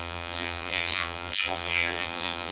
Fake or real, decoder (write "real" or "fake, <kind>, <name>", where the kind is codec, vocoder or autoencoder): fake, vocoder, BigVGAN v2